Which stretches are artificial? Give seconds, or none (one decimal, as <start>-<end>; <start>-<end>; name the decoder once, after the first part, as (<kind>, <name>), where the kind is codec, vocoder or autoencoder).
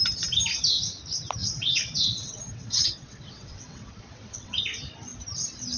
1.4-4.6 (vocoder, WaveNeXt)